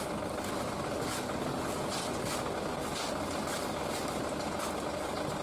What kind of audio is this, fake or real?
real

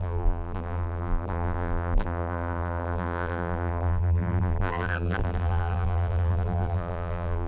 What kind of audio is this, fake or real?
fake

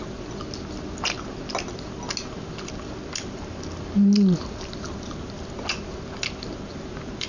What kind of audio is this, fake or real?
real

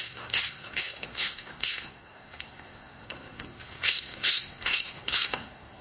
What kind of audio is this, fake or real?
fake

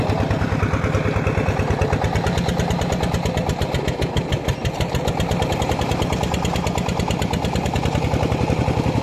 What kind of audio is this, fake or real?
real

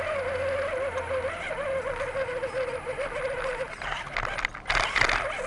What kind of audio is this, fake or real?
real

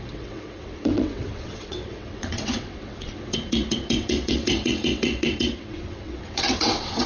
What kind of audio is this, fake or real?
fake